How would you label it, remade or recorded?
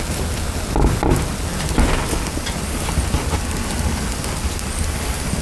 recorded